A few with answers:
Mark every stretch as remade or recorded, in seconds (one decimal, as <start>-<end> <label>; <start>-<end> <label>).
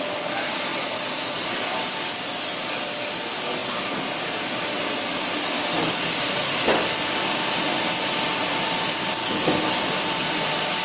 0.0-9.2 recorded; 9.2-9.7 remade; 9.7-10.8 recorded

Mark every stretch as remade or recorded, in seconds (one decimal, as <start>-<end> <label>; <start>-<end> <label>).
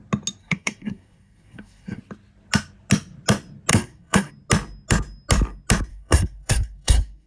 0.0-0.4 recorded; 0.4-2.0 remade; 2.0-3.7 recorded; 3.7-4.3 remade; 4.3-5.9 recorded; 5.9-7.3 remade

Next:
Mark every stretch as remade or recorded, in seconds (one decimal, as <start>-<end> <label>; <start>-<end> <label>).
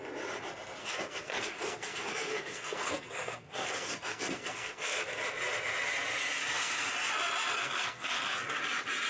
0.0-0.8 recorded; 0.8-5.0 remade; 5.0-6.4 recorded; 6.4-6.9 remade; 6.9-7.5 recorded; 7.5-8.6 remade; 8.6-9.1 recorded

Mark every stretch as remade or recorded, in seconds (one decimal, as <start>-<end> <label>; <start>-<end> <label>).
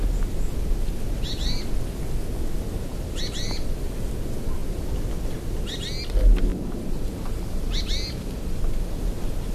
0.0-2.9 recorded; 2.9-3.9 remade; 3.9-4.6 recorded; 4.6-5.6 remade; 5.6-6.5 recorded; 6.5-9.0 remade; 9.0-9.5 recorded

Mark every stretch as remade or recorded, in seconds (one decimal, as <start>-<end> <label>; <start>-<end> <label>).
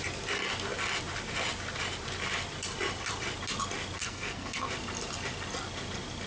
0.0-4.0 recorded; 4.0-4.7 remade; 4.7-6.3 recorded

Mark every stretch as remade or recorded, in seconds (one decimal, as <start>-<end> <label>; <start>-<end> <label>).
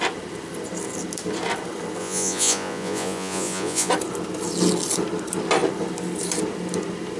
0.0-2.0 recorded; 2.0-3.9 remade; 3.9-7.2 recorded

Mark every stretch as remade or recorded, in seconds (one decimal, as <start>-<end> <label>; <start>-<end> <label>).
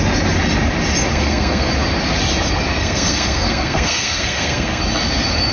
0.0-1.1 recorded; 1.1-1.7 remade; 1.7-2.8 recorded; 2.8-4.8 remade; 4.8-5.5 recorded